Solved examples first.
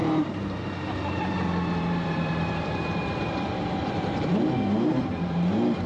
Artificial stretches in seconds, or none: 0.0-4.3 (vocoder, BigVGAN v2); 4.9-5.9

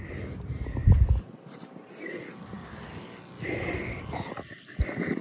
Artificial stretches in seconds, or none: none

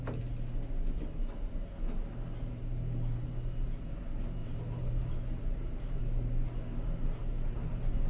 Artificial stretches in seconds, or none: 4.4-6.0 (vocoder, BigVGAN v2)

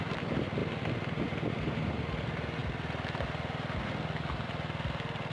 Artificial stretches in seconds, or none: none

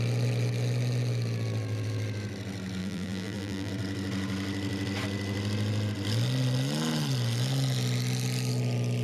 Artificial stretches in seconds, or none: 2.8-3.7 (vocoder, BigVGAN v2)

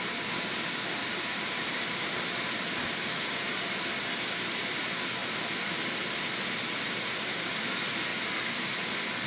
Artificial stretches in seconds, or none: 1.0-4.0 (vocoder, BigVGAN v2)